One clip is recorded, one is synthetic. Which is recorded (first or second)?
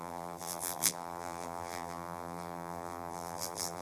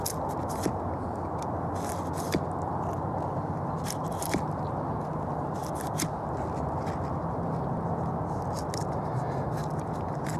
second